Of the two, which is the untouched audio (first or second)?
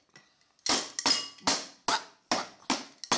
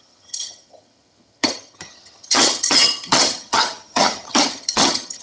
first